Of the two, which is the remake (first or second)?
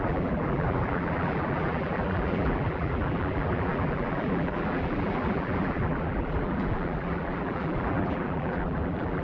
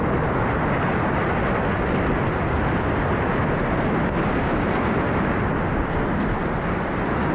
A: first